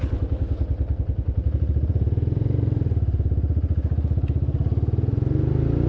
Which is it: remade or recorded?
recorded